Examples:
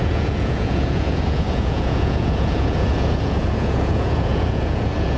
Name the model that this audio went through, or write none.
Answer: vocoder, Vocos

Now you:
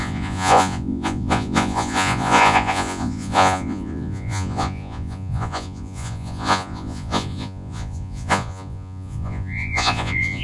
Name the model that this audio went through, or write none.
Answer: vocoder, Vocos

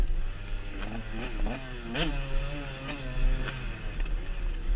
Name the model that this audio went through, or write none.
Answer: none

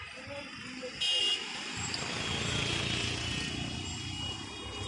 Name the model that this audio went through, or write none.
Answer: none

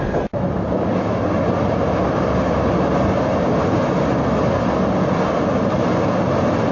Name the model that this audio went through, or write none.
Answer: none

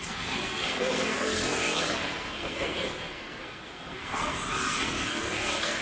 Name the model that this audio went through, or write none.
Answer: codec, SNAC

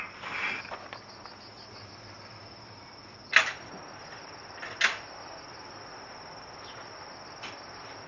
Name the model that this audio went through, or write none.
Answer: none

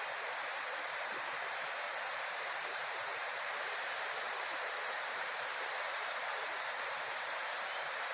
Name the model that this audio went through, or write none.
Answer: vocoder, BigVGAN v2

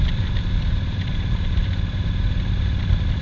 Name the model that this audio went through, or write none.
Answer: none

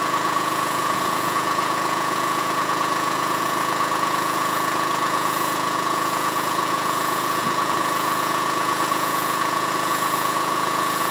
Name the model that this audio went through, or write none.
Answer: vocoder, Vocos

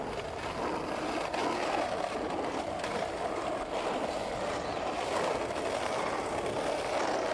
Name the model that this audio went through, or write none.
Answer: none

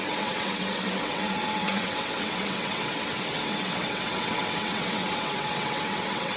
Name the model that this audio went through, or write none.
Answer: vocoder, WaveNeXt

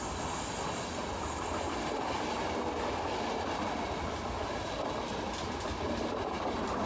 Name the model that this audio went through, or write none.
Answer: none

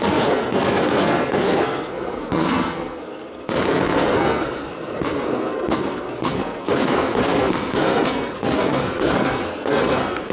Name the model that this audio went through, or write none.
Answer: codec, SNAC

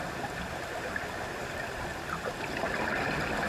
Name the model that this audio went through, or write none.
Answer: none